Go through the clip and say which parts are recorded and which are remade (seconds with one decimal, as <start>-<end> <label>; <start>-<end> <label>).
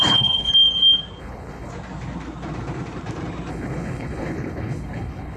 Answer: 0.0-0.5 remade; 0.5-1.2 recorded; 1.2-1.7 remade; 1.7-3.5 recorded; 3.5-5.4 remade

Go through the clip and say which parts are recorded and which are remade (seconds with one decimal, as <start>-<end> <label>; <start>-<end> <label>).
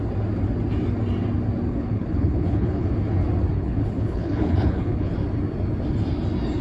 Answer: 0.0-1.7 recorded; 1.7-2.9 remade; 2.9-3.5 recorded; 3.5-5.1 remade; 5.1-6.6 recorded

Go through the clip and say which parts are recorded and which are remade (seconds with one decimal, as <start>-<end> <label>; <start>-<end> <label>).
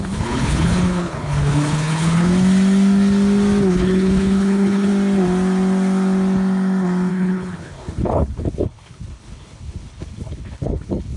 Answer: 0.0-2.3 remade; 2.3-3.7 recorded; 3.7-4.9 remade; 4.9-7.1 recorded; 7.1-11.2 remade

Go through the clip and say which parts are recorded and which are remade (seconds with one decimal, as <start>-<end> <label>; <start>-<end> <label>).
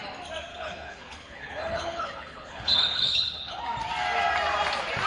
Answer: 0.0-0.5 recorded; 0.5-3.6 remade; 3.6-5.1 recorded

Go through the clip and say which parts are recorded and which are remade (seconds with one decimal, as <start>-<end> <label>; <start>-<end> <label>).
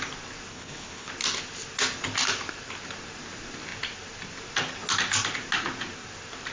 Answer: 0.0-0.5 recorded; 0.5-1.1 remade; 1.1-6.5 recorded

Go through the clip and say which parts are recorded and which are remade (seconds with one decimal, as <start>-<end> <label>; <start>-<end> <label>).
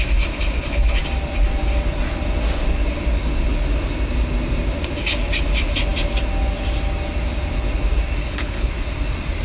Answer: 0.0-8.2 recorded; 8.2-8.7 remade; 8.7-9.4 recorded